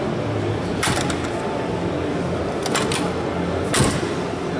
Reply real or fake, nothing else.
real